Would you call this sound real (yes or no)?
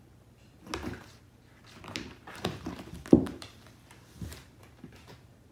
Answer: no